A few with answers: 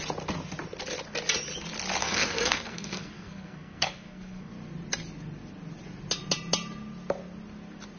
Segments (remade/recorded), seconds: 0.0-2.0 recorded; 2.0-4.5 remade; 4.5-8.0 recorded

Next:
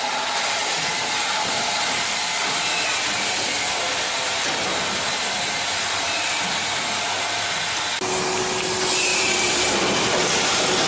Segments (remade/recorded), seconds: 0.0-0.6 recorded; 0.6-2.3 remade; 2.3-9.1 recorded; 9.1-9.7 remade; 9.7-10.9 recorded

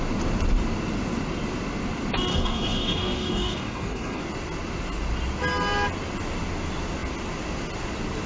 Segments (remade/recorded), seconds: 0.0-2.3 recorded; 2.3-4.2 remade; 4.2-8.3 recorded

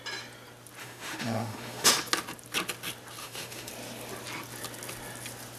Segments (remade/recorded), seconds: 0.0-0.8 recorded; 0.8-1.9 remade; 1.9-3.2 recorded; 3.2-3.7 remade; 3.7-5.6 recorded

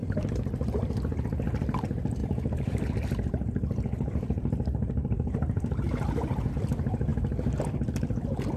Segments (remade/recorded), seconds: 0.0-1.2 remade; 1.2-2.2 recorded; 2.2-6.5 remade; 6.5-8.6 recorded

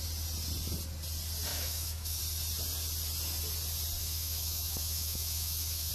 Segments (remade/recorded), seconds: 0.0-1.5 recorded; 1.5-2.2 remade; 2.2-4.0 recorded; 4.0-5.9 remade

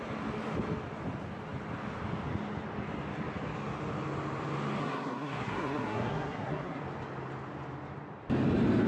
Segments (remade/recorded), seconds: 0.0-4.8 recorded; 4.8-6.8 remade; 6.8-8.9 recorded